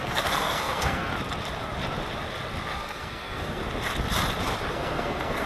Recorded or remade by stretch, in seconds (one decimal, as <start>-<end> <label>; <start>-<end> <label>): 0.0-1.1 remade; 1.1-2.7 recorded; 2.7-3.6 remade; 3.6-4.7 recorded; 4.7-5.5 remade